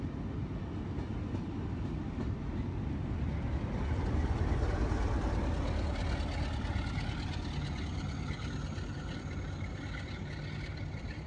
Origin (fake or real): real